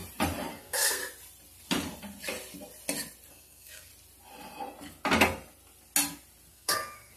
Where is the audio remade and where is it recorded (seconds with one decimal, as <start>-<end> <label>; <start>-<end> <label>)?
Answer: 0.0-0.5 recorded; 0.5-1.0 remade; 1.0-3.3 recorded; 3.3-3.9 remade; 3.9-6.5 recorded; 6.5-7.2 remade